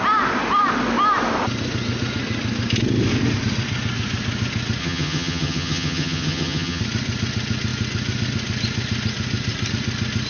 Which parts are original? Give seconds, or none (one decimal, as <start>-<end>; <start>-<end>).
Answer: 0.0-4.8; 6.8-10.3